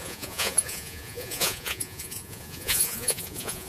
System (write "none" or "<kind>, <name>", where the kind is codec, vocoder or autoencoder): vocoder, Vocos